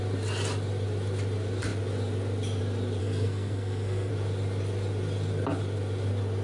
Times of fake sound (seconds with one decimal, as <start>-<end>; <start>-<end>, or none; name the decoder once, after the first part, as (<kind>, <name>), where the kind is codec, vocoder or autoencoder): 3.0-4.1 (codec, SNAC)